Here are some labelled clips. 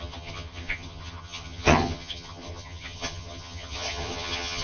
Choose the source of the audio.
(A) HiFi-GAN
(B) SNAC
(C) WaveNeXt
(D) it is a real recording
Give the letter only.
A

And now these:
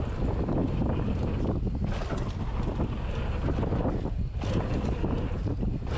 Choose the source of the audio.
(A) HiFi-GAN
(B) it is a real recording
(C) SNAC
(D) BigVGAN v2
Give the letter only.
B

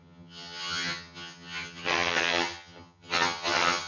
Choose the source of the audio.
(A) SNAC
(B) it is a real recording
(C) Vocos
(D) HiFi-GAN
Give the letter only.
D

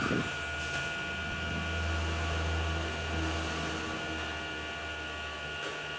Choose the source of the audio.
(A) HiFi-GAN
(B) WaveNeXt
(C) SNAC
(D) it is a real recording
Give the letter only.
D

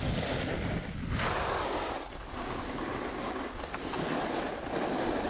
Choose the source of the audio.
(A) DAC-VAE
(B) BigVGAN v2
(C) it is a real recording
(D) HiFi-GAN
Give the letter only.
C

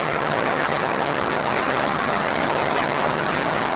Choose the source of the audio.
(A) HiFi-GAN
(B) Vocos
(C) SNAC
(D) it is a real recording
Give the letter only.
A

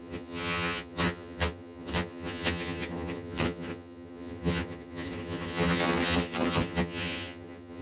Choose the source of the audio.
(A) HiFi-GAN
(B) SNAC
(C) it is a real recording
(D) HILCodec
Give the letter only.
A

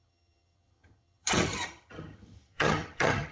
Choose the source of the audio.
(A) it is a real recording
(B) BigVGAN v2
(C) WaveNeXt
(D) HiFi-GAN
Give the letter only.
D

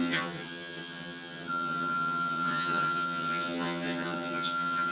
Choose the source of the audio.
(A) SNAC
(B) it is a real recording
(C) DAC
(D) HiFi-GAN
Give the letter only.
D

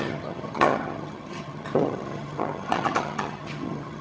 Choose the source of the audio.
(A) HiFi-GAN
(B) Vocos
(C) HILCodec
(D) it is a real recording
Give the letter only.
A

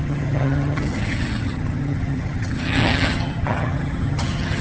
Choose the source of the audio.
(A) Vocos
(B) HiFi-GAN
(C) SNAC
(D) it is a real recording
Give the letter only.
B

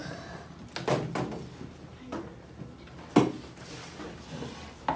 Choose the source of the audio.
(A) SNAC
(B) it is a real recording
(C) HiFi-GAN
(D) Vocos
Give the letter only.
B